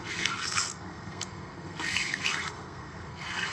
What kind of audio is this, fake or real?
fake